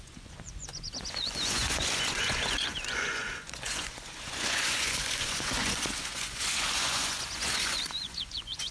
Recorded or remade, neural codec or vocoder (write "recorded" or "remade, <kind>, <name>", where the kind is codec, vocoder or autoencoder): remade, vocoder, Vocos